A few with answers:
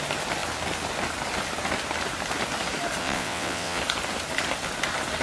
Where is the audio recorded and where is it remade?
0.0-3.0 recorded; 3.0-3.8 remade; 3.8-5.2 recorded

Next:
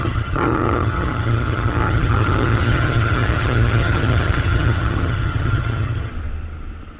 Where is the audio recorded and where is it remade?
0.0-6.1 remade; 6.1-7.0 recorded

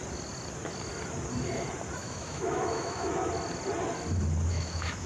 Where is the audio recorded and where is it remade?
0.0-2.0 recorded; 2.0-3.3 remade; 3.3-4.5 recorded; 4.5-5.1 remade

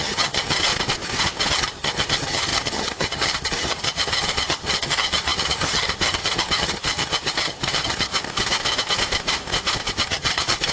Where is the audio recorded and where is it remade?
0.0-0.7 remade; 0.7-1.5 recorded; 1.5-8.1 remade; 8.1-9.9 recorded; 9.9-10.7 remade

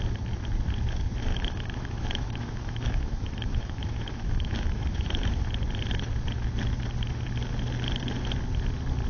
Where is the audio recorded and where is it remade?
0.0-1.3 recorded; 1.3-5.5 remade; 5.5-9.1 recorded